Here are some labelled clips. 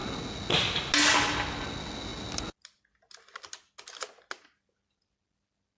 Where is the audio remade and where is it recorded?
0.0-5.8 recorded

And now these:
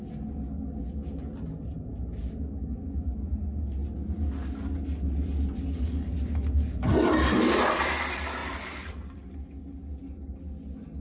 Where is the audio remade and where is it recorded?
0.0-8.4 recorded; 8.4-9.2 remade; 9.2-11.0 recorded

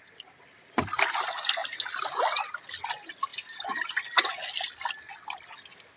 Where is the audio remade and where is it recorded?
0.0-6.0 recorded

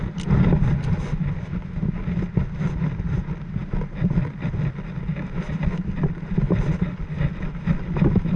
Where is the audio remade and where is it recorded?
0.0-8.4 recorded